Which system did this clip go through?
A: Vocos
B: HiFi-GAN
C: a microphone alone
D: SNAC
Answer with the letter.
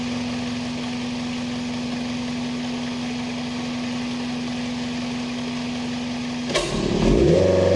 C